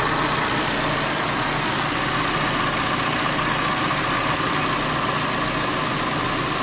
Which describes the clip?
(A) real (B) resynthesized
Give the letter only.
A